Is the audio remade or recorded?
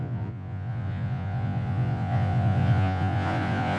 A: remade